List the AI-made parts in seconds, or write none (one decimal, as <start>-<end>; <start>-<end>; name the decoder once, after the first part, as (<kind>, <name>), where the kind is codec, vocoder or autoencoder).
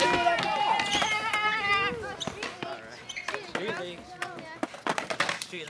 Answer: none